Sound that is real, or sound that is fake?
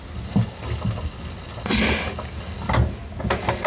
real